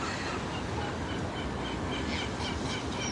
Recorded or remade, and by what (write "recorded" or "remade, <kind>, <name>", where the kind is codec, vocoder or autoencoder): recorded